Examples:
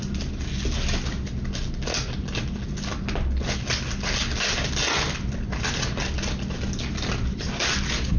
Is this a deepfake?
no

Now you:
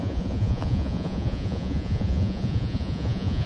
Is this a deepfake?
yes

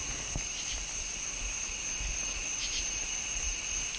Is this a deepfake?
no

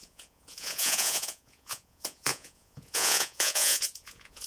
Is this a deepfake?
yes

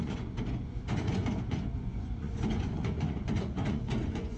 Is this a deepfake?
yes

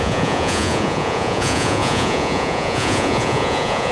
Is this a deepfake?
yes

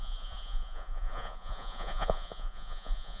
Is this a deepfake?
yes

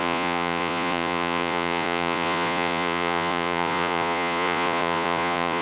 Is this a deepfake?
yes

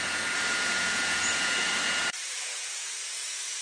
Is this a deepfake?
yes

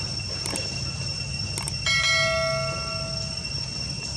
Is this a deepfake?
no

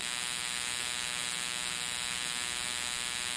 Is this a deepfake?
no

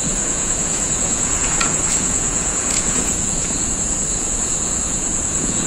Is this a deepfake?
yes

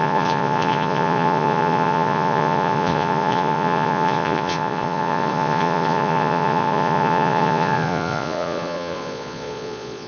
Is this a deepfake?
yes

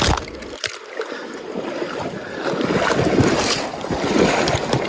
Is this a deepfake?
no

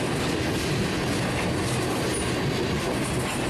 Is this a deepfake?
no